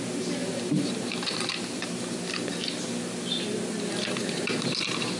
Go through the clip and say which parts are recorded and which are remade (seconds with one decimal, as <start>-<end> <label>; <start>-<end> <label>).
0.0-0.4 recorded; 0.4-2.2 remade; 2.2-5.2 recorded